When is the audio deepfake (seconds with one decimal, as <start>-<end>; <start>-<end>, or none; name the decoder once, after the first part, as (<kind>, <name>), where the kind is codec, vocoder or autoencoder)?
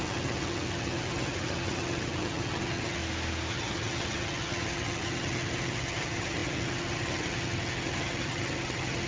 0.0-3.0 (vocoder, HiFi-GAN); 3.5-9.1